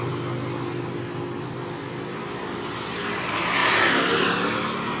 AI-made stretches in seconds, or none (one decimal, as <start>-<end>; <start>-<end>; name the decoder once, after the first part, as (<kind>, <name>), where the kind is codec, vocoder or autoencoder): none